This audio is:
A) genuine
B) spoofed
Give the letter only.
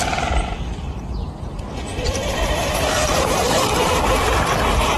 A